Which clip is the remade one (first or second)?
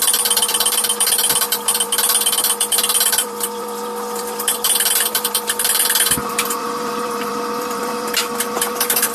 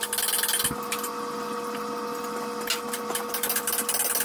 first